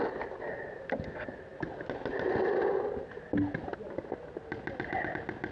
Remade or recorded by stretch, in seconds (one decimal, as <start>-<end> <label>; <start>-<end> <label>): 0.0-5.5 recorded